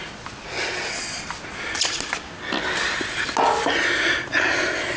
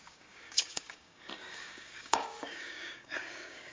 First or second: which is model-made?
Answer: second